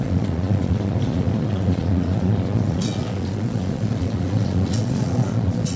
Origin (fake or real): fake